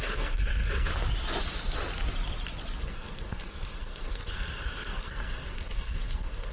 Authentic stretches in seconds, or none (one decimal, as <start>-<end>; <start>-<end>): 0.9-2.8